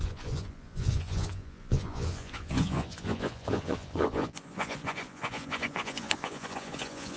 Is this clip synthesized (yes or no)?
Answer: yes